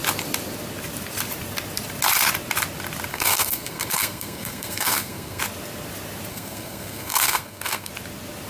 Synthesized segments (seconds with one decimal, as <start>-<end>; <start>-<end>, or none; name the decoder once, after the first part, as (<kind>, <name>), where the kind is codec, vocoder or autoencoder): 3.1-5.4 (codec, SNAC); 6.3-7.9